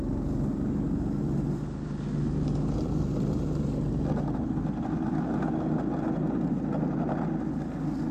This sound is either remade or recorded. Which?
recorded